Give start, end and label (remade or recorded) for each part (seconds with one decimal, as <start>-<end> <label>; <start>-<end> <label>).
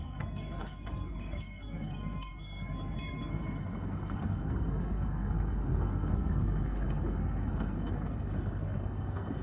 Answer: 0.0-9.4 remade